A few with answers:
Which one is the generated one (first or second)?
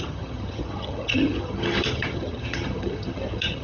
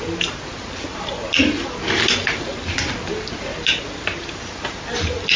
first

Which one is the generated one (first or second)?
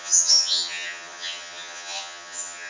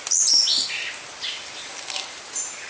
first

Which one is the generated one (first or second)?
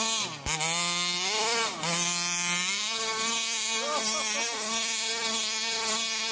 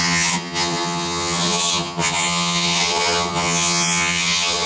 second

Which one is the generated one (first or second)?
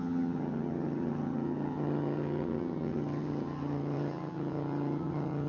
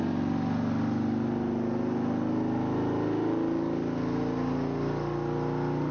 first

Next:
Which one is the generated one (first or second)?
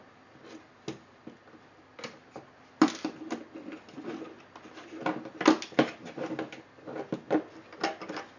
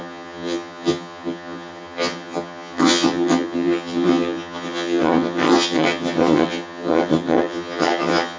second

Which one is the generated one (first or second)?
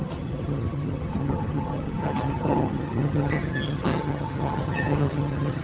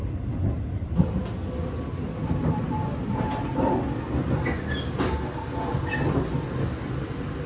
first